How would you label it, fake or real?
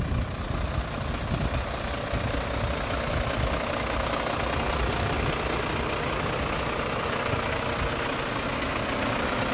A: real